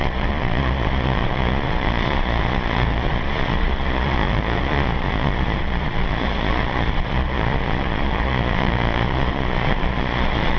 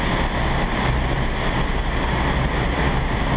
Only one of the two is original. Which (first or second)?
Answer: second